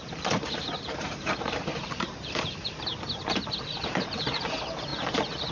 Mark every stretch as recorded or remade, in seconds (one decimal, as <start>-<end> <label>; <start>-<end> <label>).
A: 0.0-2.9 remade; 2.9-3.8 recorded; 3.8-5.5 remade